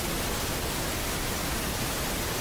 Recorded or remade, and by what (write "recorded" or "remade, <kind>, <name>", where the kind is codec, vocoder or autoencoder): recorded